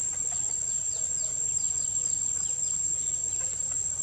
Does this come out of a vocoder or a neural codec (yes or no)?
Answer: no